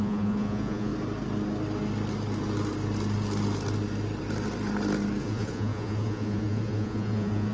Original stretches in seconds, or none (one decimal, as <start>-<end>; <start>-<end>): 0.9-5.2